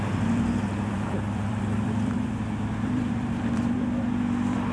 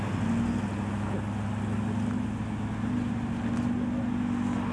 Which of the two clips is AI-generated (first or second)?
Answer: first